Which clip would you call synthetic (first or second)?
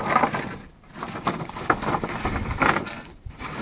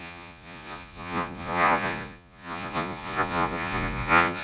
second